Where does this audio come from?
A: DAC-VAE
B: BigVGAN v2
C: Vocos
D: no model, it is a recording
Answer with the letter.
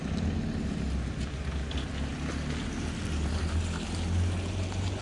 D